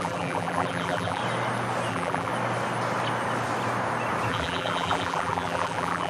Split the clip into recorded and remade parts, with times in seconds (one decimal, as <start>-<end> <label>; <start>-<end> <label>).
0.0-1.2 remade; 1.2-1.9 recorded; 1.9-2.3 remade; 2.3-4.3 recorded; 4.3-6.1 remade